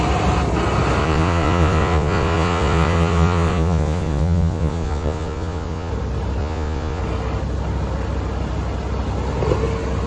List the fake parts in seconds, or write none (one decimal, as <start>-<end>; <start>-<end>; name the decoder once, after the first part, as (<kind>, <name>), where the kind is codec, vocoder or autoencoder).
1.0-5.9 (vocoder, Vocos); 6.4-7.0